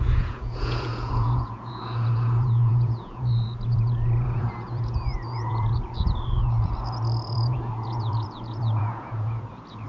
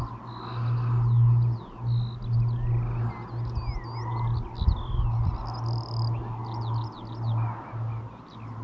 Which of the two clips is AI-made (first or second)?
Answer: first